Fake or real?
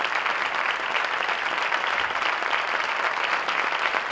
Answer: real